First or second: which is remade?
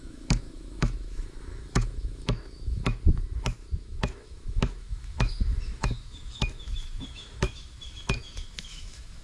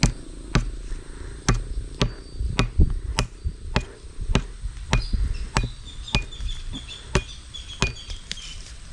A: first